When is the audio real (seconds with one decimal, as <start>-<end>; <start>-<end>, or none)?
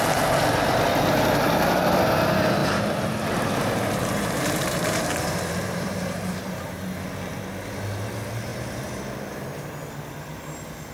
0.0-2.6; 7.4-8.5; 9.0-10.9